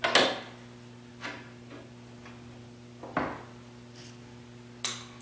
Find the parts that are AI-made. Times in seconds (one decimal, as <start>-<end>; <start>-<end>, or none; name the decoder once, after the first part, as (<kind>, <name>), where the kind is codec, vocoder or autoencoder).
none